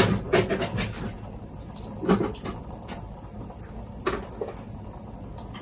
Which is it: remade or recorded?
recorded